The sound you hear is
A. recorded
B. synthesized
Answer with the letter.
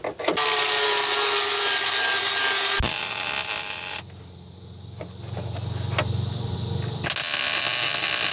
A